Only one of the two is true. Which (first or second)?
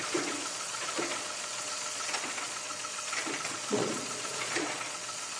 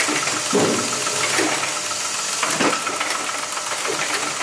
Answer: second